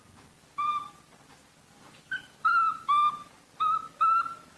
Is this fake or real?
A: real